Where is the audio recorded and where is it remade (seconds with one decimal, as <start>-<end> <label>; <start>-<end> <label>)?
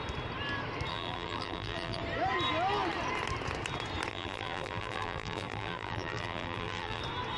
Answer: 0.0-0.9 recorded; 0.9-2.0 remade; 2.0-4.1 recorded; 4.1-7.0 remade; 7.0-7.4 recorded